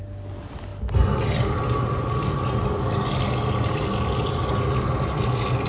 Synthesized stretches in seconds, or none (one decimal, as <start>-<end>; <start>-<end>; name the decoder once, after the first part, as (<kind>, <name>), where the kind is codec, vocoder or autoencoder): none